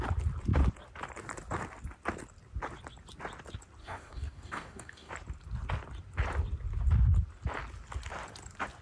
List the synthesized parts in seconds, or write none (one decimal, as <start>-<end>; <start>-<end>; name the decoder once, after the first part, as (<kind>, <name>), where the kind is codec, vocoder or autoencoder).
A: 3.8-5.1 (codec, DAC)